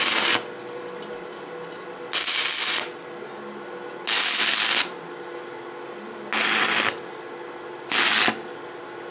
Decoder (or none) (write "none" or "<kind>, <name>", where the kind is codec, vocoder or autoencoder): none